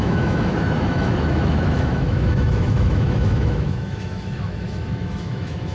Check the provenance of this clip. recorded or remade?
remade